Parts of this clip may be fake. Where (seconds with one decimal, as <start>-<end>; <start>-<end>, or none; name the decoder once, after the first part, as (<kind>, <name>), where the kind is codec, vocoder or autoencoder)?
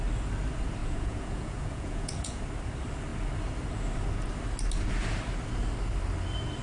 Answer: 0.8-2.4 (vocoder, Vocos)